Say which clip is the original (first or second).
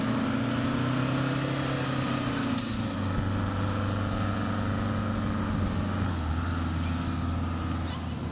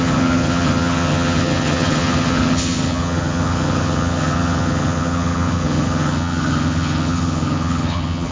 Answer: first